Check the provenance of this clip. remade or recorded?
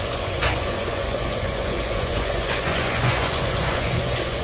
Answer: remade